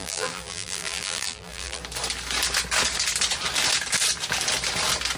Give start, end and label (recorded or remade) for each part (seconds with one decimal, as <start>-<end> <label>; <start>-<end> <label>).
0.0-1.8 remade; 1.8-5.2 recorded